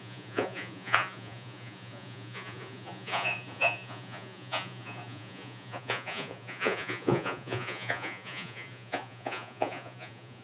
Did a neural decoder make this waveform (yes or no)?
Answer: yes